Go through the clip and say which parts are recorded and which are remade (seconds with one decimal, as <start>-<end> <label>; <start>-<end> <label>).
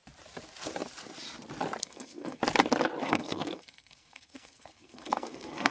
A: 0.0-1.8 recorded; 1.8-2.4 remade; 2.4-3.0 recorded; 3.0-5.7 remade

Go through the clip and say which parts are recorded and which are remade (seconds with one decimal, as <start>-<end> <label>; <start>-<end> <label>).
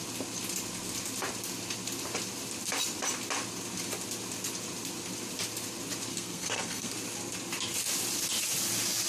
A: 0.0-6.1 recorded; 6.1-6.9 remade; 6.9-9.1 recorded